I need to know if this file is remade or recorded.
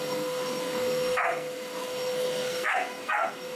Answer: remade